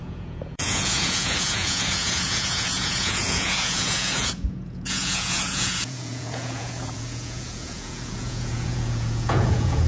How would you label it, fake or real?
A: fake